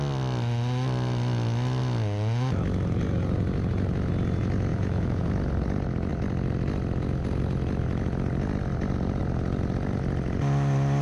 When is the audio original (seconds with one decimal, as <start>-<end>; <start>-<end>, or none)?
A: 0.0-4.7; 5.3-11.0